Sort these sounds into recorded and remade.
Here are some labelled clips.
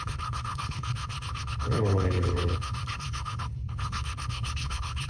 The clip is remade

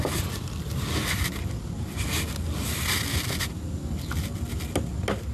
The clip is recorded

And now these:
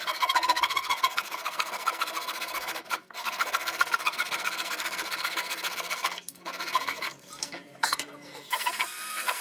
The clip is remade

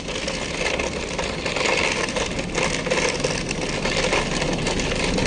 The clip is recorded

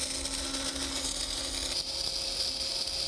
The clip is recorded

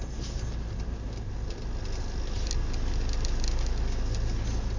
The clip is recorded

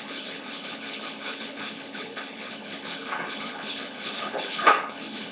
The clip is remade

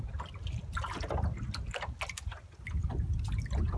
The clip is recorded